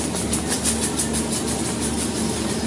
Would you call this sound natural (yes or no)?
yes